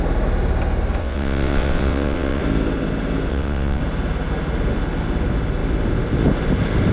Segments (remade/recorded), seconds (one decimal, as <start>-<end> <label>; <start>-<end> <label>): 0.0-1.0 recorded; 1.0-2.4 remade; 2.4-3.3 recorded; 3.3-3.8 remade; 3.8-6.9 recorded